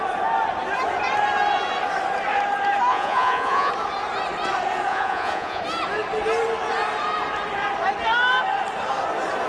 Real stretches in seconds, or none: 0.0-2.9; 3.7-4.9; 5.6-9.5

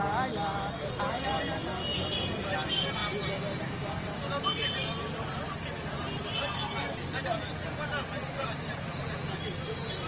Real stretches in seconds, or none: 0.0-10.1

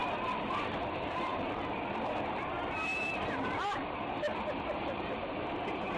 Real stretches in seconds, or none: 0.0-0.6

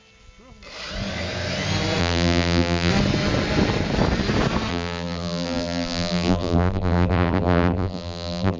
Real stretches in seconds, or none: 0.0-2.0; 2.9-4.7

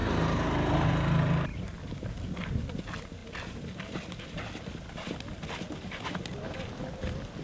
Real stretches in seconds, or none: 0.0-7.4

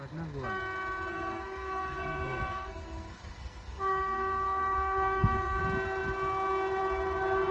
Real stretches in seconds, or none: 0.0-1.1; 5.6-7.5

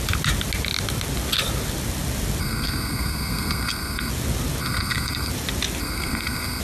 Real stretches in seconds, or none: 0.0-2.4; 4.1-4.6; 5.3-5.8

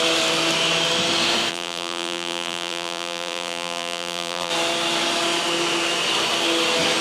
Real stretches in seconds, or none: 0.0-1.5; 4.5-7.0